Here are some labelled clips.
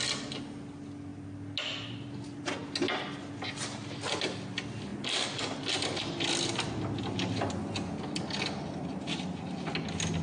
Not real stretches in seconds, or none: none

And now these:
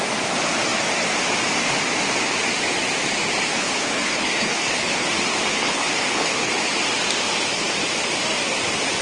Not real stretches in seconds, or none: 3.5-5.1 (codec, HILCodec); 5.5-6.5

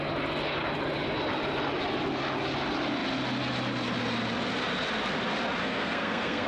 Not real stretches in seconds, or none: 5.6-6.5 (codec, SNAC)

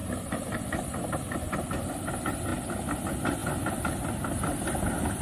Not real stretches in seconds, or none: 0.0-1.9 (vocoder, BigVGAN v2)